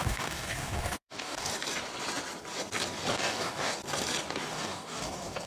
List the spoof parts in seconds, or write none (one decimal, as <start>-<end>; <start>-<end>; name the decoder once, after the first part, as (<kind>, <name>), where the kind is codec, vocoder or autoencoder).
0.0-1.5 (codec, DAC); 3.1-3.8; 4.5-5.5